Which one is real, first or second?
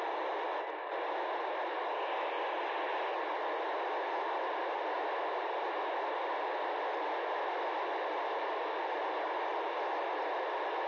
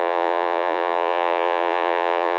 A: first